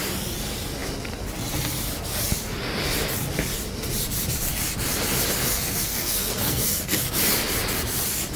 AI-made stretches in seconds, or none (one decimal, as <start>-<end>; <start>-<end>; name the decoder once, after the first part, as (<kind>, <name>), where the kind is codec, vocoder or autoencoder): 5.5-7.0 (codec, SNAC)